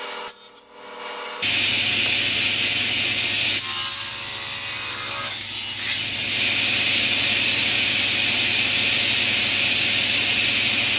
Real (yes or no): yes